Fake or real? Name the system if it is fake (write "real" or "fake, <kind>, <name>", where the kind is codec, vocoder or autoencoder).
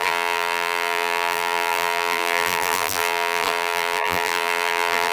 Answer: fake, vocoder, BigVGAN v2